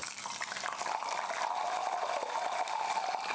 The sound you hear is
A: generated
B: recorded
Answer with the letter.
B